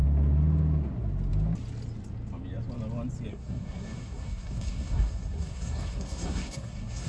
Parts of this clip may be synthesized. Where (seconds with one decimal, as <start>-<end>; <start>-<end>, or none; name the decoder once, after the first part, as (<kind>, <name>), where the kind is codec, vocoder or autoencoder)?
3.3-7.1 (codec, SNAC)